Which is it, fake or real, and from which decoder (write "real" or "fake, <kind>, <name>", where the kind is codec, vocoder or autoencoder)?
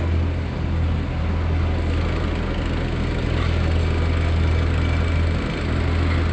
real